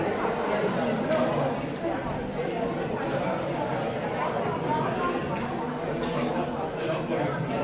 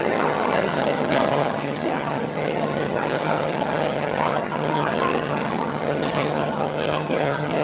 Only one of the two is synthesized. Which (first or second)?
second